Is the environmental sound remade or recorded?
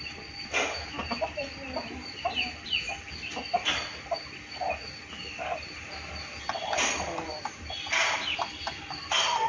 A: recorded